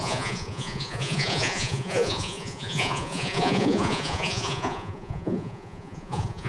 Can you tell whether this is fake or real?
fake